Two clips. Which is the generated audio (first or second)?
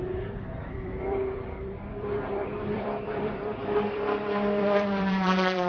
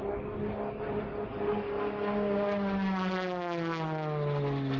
first